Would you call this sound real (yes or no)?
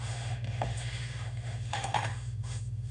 no